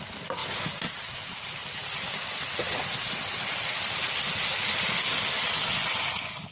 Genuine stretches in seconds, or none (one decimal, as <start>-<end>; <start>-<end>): 0.0-6.5